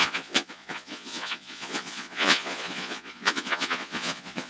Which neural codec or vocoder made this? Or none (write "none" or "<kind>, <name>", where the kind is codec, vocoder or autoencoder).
vocoder, Vocos